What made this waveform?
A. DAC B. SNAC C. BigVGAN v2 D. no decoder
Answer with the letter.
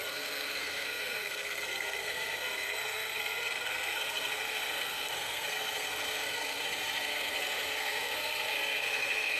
B